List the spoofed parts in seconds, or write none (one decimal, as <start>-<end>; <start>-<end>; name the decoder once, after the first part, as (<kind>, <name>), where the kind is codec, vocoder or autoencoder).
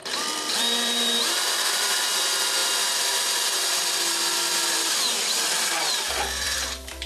0.0-7.1 (vocoder, BigVGAN v2)